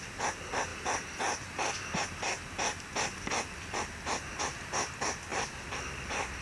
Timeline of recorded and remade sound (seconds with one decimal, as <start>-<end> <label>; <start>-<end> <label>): 0.0-5.3 recorded; 5.3-6.4 remade